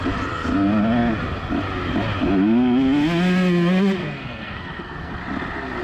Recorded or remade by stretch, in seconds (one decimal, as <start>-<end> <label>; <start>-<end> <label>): 0.0-4.0 recorded; 4.0-5.1 remade; 5.1-5.8 recorded